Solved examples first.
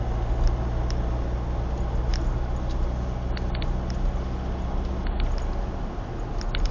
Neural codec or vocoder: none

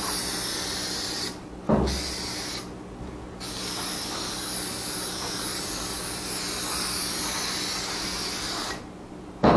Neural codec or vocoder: none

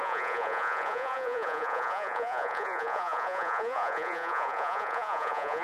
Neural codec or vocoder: vocoder, Vocos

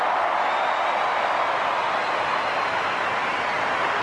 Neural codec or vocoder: none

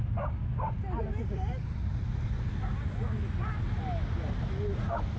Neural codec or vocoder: none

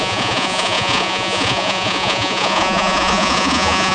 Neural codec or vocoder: vocoder, Vocos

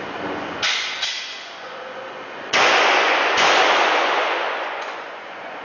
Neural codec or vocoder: vocoder, Vocos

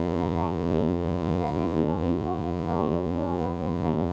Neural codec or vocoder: vocoder, Vocos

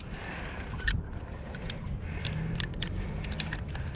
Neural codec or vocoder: none